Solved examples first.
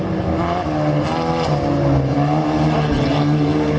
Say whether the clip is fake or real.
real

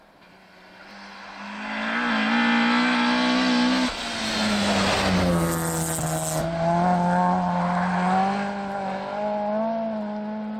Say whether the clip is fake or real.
real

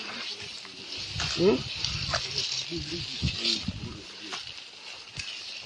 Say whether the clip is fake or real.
real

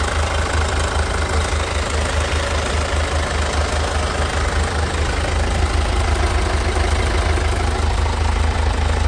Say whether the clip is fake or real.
real